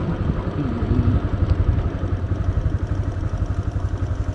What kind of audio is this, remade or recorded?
recorded